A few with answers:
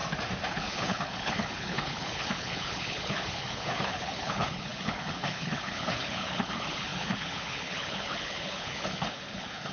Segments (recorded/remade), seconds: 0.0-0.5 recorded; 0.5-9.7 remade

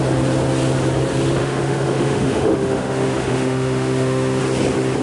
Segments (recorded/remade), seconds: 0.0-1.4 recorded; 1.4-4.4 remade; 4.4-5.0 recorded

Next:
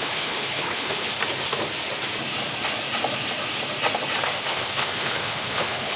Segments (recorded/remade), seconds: 0.0-1.1 remade; 1.1-4.5 recorded; 4.5-6.0 remade

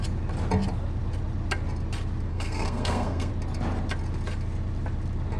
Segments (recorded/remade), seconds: 0.0-2.3 recorded; 2.3-3.3 remade; 3.3-5.4 recorded

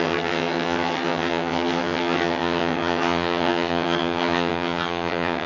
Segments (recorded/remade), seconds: 0.0-5.5 remade

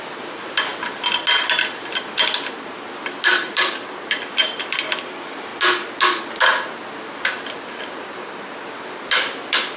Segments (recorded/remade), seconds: 0.0-0.7 remade; 0.7-3.5 recorded; 3.5-5.5 remade; 5.5-8.0 recorded; 8.0-9.8 remade

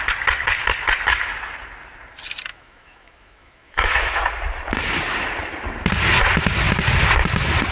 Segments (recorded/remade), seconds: 0.0-2.5 recorded; 2.5-4.2 remade; 4.2-7.7 recorded

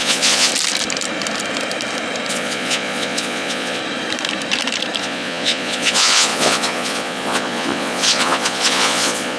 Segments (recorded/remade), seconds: 0.0-0.5 remade; 0.5-2.3 recorded; 2.3-3.8 remade; 3.8-5.0 recorded; 5.0-9.4 remade